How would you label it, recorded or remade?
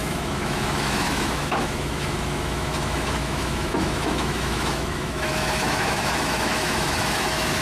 remade